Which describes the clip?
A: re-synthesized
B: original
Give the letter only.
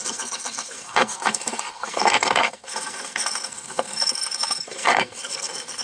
A